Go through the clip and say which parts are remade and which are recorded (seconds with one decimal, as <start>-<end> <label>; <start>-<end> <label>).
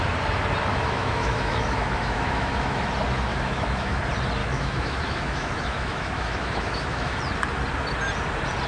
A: 0.0-0.7 recorded; 0.7-2.9 remade; 2.9-3.3 recorded; 3.3-4.0 remade; 4.0-4.4 recorded; 4.4-7.2 remade; 7.2-8.7 recorded